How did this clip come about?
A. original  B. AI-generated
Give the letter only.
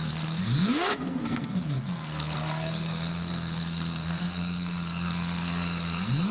B